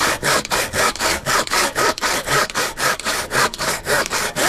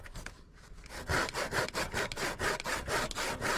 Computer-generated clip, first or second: first